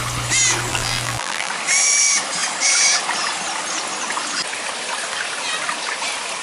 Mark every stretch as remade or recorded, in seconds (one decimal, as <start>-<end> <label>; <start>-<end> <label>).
0.0-0.7 recorded; 0.7-1.5 remade; 1.5-6.4 recorded